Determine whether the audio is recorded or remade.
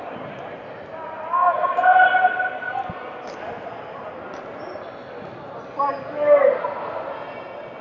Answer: recorded